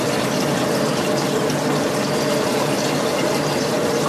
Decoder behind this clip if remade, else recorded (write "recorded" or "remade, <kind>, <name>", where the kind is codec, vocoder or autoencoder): recorded